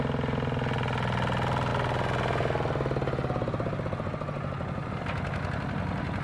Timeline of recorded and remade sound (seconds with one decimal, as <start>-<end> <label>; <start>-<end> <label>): 0.0-6.2 recorded